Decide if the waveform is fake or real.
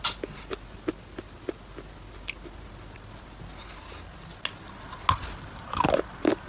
real